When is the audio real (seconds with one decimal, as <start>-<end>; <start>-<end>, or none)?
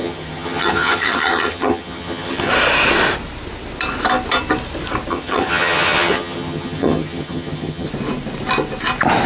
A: 2.5-5.1; 7.9-9.3